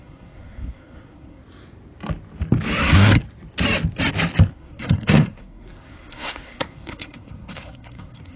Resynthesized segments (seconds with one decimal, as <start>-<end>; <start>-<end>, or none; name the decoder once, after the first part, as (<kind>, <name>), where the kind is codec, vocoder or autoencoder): 0.0-1.4 (codec, SNAC); 2.8-3.2; 4.5-8.4